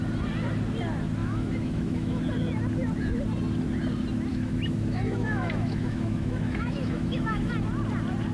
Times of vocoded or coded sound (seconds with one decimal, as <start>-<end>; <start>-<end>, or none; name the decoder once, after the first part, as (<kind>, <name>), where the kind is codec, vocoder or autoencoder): 1.2-2.2 (autoencoder, DAC-VAE); 4.3-7.5